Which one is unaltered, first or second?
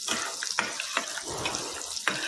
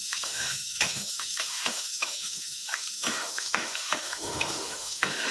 first